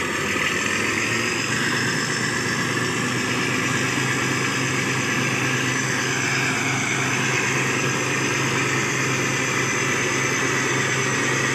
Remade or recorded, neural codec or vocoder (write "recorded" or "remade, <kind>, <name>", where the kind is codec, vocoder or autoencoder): recorded